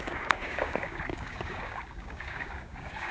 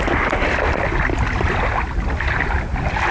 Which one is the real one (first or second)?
second